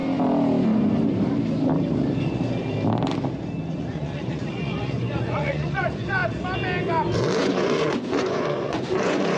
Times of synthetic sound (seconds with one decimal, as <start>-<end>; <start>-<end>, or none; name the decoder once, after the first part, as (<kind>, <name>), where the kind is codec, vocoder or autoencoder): 3.8-6.2 (vocoder, Vocos); 7.4-9.4